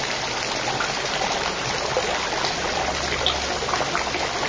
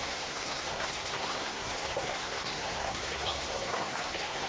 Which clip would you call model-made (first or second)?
second